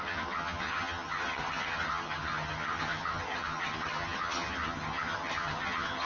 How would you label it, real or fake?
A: fake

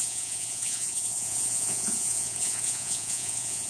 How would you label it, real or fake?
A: fake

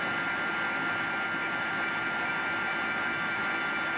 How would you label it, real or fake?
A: real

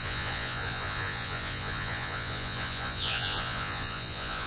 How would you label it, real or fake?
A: fake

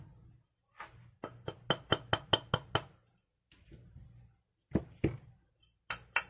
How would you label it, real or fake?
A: real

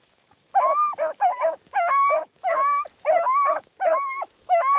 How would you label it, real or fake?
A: fake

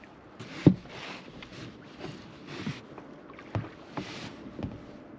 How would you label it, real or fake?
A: real